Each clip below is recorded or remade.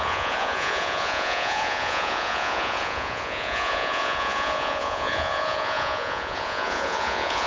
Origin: remade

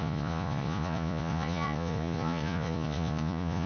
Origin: remade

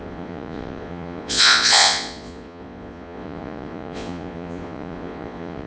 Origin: remade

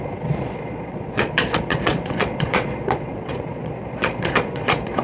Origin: remade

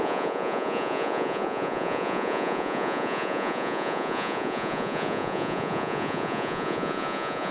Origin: remade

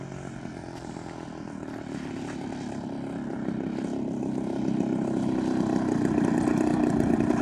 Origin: recorded